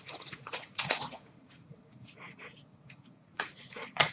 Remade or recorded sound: remade